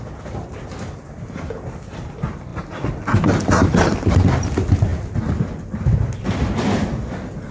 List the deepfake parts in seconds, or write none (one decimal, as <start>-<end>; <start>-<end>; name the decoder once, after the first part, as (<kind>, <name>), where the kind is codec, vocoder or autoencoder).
none